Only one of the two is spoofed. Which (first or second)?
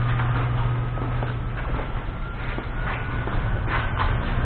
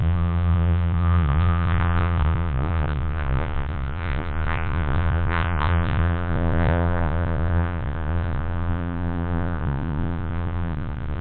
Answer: second